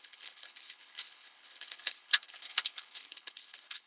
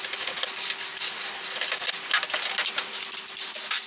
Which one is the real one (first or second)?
second